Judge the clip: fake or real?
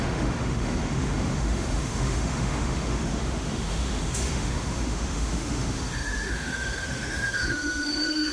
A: fake